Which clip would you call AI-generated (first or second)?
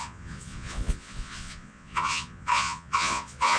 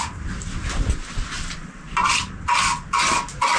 first